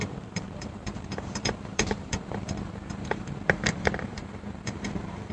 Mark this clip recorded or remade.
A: remade